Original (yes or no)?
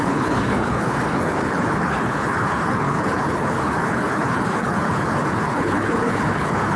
no